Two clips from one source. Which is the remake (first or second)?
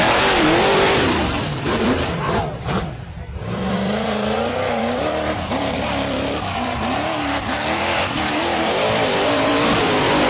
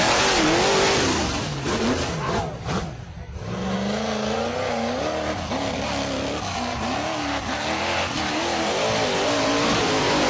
first